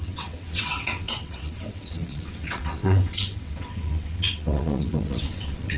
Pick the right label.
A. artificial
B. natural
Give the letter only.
A